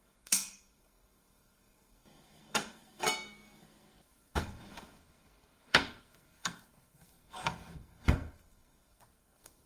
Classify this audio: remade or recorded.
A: remade